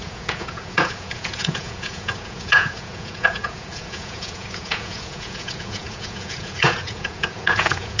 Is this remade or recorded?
remade